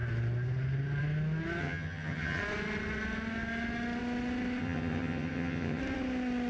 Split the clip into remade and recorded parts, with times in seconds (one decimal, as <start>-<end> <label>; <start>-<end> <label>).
0.0-1.6 recorded; 1.6-2.4 remade; 2.4-4.6 recorded; 4.6-5.8 remade; 5.8-6.5 recorded